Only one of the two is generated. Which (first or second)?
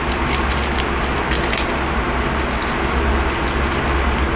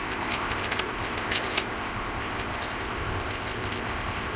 second